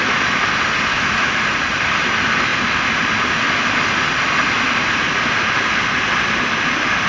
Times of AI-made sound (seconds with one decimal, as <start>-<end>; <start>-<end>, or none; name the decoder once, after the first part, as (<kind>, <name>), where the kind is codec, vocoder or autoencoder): 0.9-1.4 (autoencoder, DAC-VAE)